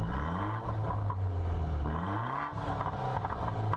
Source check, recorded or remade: recorded